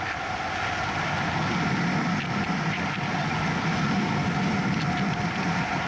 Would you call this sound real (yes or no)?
yes